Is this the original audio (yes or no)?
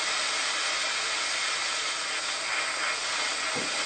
yes